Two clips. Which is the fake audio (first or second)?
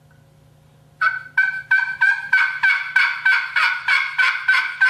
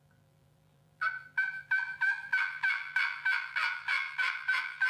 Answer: second